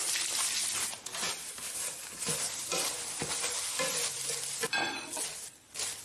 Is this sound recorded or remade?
recorded